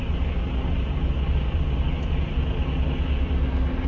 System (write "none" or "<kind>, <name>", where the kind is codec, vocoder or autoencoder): none